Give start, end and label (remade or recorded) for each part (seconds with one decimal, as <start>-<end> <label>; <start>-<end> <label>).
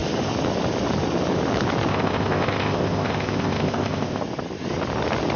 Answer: 0.0-1.9 recorded; 1.9-4.2 remade; 4.2-5.4 recorded